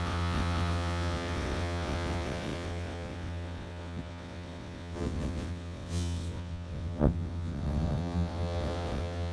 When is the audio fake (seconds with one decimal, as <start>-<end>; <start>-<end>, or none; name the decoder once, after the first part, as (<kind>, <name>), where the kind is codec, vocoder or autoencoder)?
0.0-9.3 (vocoder, WaveNeXt)